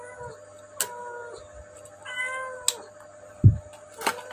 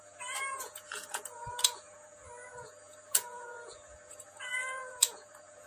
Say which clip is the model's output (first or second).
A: second